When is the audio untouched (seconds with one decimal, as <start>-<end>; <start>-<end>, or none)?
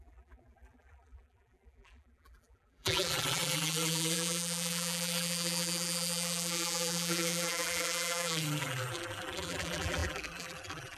none